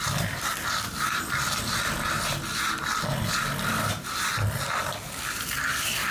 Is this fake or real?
real